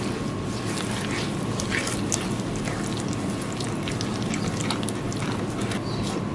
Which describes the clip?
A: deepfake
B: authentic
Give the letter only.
B